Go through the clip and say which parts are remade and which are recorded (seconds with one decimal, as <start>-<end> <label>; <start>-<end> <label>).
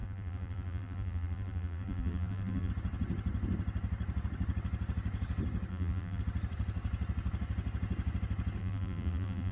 0.0-2.7 remade; 2.7-5.7 recorded; 5.7-6.2 remade; 6.2-8.6 recorded; 8.6-9.5 remade